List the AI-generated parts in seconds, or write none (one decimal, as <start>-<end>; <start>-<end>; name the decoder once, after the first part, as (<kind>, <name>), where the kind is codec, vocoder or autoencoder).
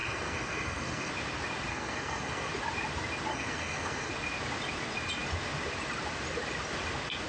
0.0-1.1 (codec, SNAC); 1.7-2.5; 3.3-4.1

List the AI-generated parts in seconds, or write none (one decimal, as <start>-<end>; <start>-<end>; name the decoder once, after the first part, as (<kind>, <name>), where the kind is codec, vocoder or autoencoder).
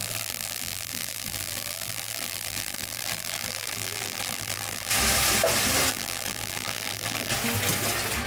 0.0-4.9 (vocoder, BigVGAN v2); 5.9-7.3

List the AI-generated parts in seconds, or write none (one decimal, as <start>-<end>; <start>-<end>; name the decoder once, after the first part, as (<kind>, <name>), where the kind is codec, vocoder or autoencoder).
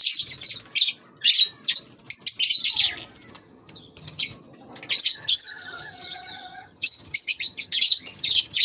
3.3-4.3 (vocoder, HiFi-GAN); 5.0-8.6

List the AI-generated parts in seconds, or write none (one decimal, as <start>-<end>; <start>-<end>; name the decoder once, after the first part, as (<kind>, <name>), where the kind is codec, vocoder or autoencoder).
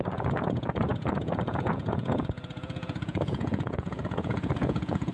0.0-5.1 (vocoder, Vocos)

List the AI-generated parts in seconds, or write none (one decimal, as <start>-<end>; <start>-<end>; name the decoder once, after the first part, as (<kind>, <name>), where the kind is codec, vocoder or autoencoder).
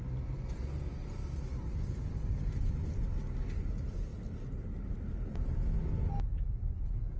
none